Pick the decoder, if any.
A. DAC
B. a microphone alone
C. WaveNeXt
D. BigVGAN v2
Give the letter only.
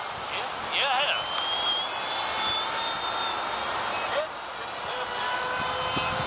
B